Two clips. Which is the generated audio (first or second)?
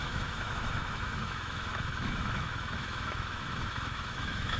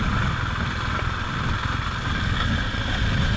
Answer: first